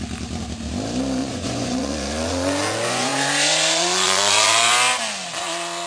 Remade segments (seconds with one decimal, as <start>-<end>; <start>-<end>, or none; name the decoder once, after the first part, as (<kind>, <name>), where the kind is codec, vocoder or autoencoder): 1.2-4.7 (vocoder, Vocos)